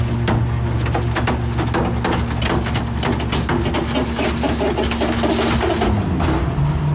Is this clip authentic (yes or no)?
yes